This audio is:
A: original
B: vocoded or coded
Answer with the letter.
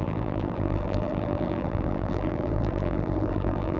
B